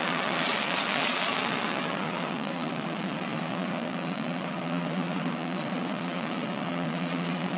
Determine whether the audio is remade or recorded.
remade